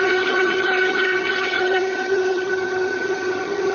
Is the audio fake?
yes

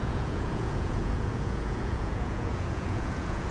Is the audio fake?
yes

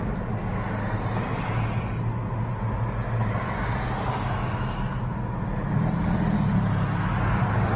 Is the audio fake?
no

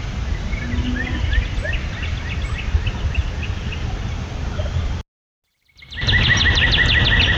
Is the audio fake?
no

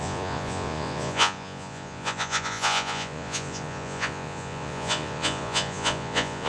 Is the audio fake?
yes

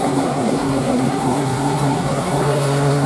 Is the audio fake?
yes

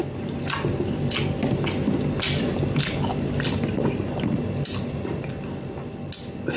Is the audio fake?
no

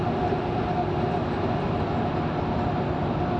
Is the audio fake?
no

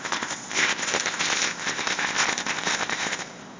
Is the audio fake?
yes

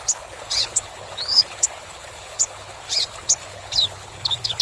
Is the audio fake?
yes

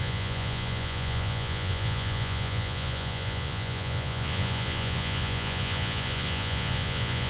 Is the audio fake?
yes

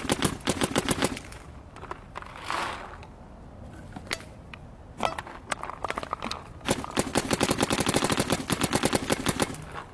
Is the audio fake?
no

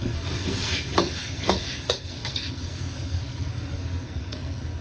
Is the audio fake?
yes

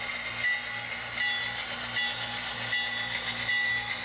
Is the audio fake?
no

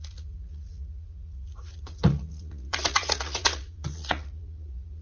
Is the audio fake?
yes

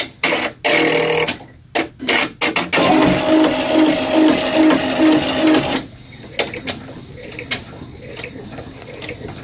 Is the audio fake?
no